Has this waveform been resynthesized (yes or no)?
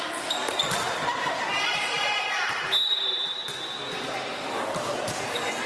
yes